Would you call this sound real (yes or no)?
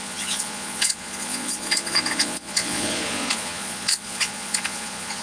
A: no